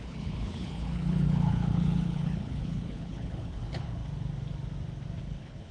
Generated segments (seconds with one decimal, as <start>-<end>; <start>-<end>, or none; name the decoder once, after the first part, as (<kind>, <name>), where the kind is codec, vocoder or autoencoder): 0.0-4.0 (codec, HILCodec); 5.2-5.7